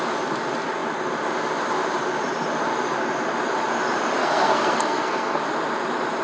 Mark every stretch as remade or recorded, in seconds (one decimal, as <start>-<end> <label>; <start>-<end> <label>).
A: 0.0-4.2 recorded; 4.2-5.4 remade; 5.4-6.2 recorded